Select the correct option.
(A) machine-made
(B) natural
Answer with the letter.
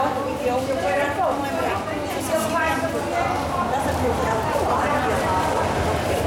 A